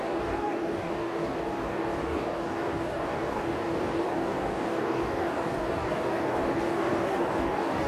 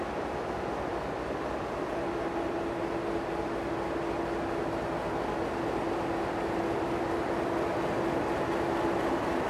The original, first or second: second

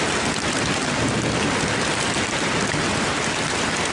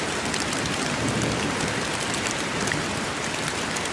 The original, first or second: first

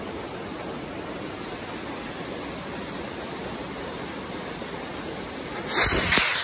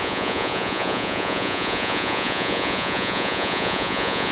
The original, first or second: first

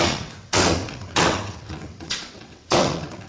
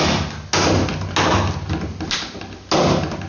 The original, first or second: second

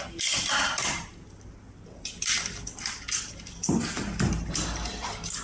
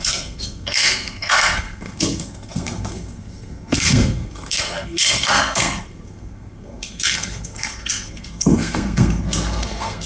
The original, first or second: first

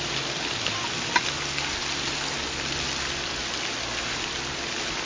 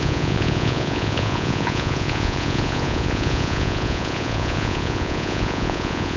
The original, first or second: first